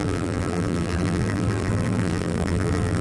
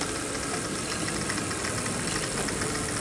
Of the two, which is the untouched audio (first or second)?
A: second